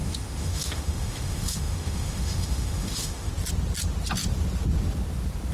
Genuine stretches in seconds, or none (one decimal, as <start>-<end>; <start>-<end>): 3.3-5.5